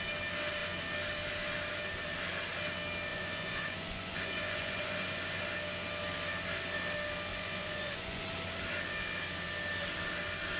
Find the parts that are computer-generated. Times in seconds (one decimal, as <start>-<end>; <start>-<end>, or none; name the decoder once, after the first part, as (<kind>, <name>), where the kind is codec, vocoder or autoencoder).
3.1-5.4 (vocoder, Vocos); 7.3-8.3